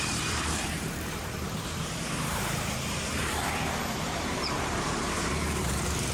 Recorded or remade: remade